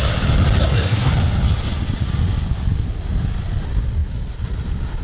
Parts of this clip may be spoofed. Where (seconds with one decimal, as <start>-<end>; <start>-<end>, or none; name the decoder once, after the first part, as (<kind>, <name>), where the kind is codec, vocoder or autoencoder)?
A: 0.6-1.1 (codec, SNAC)